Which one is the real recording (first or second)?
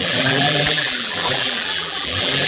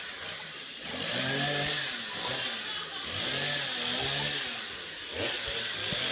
second